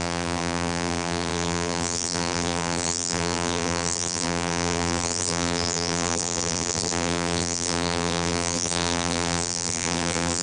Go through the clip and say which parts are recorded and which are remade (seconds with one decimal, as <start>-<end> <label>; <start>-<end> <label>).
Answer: 0.0-10.4 remade